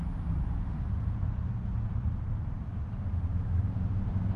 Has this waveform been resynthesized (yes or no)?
yes